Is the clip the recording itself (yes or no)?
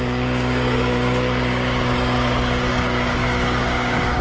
no